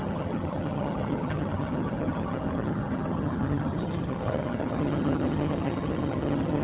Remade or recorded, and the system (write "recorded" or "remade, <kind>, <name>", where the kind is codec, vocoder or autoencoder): remade, vocoder, HiFi-GAN